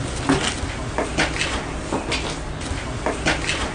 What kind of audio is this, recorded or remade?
recorded